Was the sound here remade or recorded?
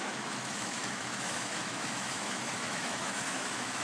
remade